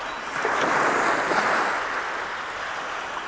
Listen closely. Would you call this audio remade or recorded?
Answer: recorded